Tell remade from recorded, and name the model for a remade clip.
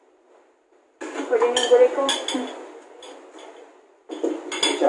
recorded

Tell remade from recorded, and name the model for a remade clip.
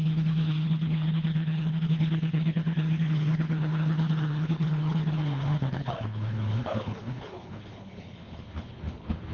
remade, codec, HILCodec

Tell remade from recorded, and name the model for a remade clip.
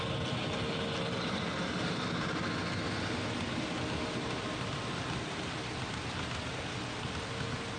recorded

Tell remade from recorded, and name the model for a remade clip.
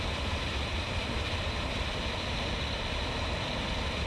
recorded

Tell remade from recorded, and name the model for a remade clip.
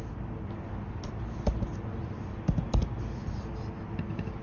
recorded